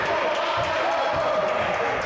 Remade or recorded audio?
recorded